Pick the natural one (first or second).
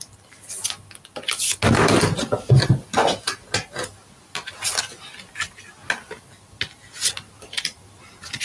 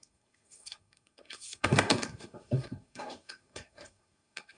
first